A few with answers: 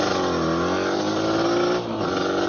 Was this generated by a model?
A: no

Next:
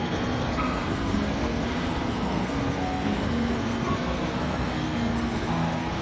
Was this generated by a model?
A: yes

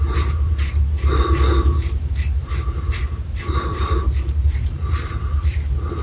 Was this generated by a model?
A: yes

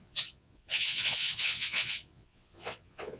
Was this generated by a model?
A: yes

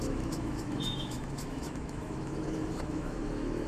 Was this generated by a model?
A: yes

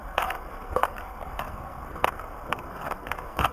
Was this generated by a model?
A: yes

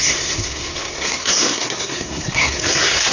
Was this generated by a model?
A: yes